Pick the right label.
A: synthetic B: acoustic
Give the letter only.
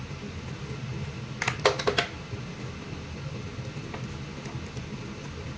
B